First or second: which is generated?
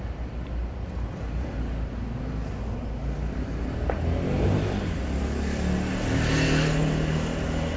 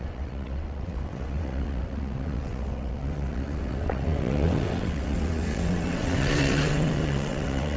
second